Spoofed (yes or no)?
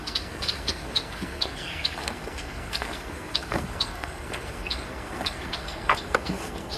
yes